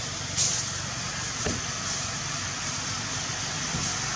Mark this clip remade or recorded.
recorded